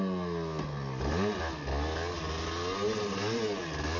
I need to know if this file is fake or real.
real